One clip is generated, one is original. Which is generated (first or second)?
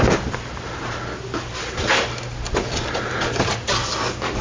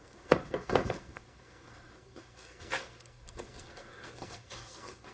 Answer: second